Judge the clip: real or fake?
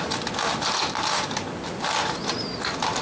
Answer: real